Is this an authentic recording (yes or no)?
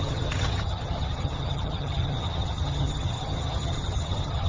no